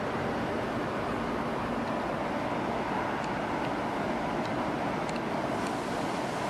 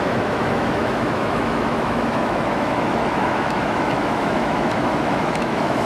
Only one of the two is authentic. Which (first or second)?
first